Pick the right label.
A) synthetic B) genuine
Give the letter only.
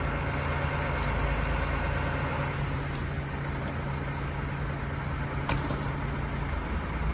B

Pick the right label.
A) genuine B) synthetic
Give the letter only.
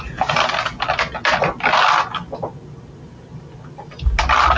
A